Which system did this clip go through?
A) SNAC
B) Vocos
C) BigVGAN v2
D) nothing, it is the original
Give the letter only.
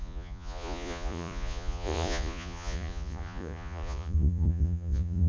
B